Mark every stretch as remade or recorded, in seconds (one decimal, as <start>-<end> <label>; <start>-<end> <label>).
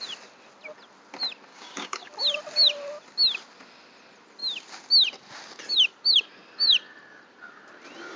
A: 0.0-1.5 recorded; 1.5-2.1 remade; 2.1-8.2 recorded